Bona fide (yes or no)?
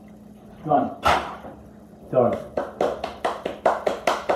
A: yes